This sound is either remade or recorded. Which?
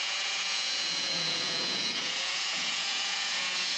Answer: remade